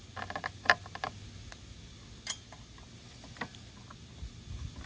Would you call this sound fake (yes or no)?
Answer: no